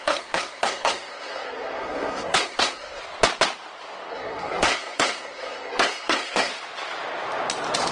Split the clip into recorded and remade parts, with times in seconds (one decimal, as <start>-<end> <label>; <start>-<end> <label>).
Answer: 0.0-3.0 remade; 3.0-4.1 recorded; 4.1-6.5 remade; 6.5-7.9 recorded

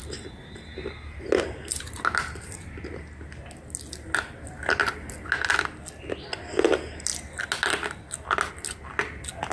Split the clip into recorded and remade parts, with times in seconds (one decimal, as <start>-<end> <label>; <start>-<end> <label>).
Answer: 0.0-9.5 recorded

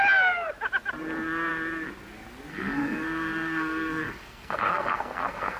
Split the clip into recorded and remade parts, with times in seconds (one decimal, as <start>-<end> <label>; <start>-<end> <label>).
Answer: 0.0-2.5 recorded; 2.5-5.6 remade

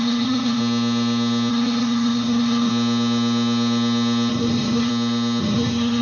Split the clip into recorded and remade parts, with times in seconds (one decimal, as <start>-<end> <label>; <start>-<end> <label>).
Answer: 0.0-0.6 remade; 0.6-1.5 recorded; 1.5-2.7 remade; 2.7-4.3 recorded; 4.3-4.9 remade; 4.9-5.4 recorded; 5.4-6.0 remade